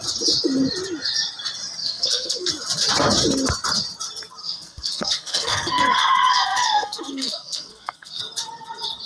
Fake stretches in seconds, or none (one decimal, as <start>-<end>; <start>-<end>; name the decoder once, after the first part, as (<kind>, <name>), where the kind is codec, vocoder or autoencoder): 1.8-2.5 (codec, SNAC); 4.4-8.2